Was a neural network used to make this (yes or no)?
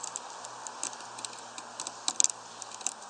no